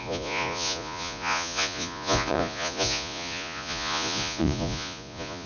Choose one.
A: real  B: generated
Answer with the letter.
B